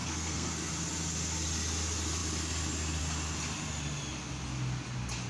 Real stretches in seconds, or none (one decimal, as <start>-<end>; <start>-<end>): 0.5-5.3